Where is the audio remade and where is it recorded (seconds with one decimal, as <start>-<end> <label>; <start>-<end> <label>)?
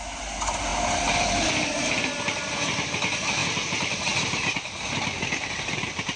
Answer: 0.0-6.2 recorded